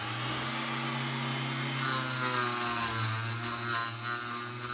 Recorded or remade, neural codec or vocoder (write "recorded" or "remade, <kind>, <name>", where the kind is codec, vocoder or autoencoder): recorded